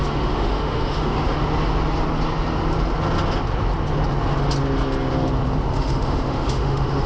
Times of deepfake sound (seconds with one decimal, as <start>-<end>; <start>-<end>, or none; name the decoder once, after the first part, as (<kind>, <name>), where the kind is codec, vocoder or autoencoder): 0.0-1.4 (autoencoder, DAC-VAE); 5.7-7.1